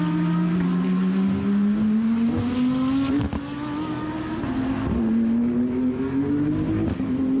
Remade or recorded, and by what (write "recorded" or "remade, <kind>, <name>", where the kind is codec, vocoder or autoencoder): recorded